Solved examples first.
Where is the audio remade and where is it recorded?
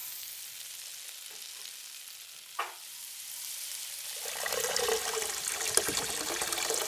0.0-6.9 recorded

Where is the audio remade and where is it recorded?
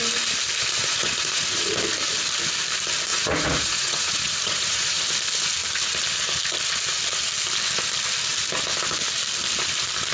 0.0-0.8 recorded; 0.8-1.6 remade; 1.6-3.1 recorded; 3.1-5.0 remade; 5.0-10.1 recorded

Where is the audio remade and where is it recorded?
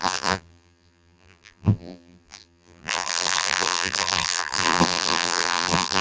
0.0-6.0 remade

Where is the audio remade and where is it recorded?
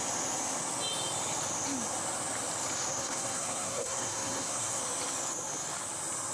0.0-3.0 recorded; 3.0-4.8 remade; 4.8-6.3 recorded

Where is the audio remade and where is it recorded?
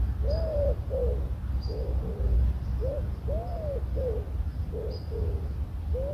0.0-6.1 recorded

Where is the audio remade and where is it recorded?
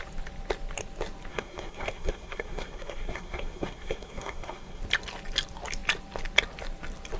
0.0-1.3 recorded; 1.3-4.8 remade; 4.8-7.2 recorded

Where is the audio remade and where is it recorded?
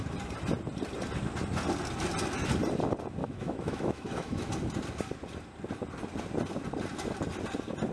0.0-3.2 recorded; 3.2-4.5 remade; 4.5-7.9 recorded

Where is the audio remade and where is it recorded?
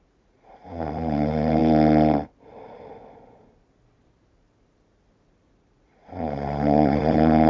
0.0-1.6 remade; 1.6-5.6 recorded; 5.6-7.5 remade